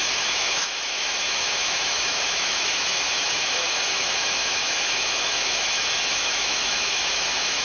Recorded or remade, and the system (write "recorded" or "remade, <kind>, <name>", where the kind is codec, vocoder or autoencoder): remade, autoencoder, DAC-VAE